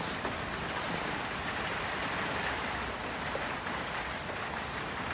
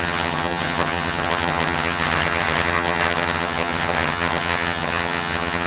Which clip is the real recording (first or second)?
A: first